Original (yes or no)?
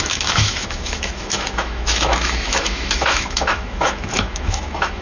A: no